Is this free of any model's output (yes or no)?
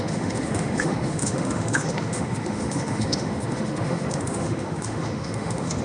no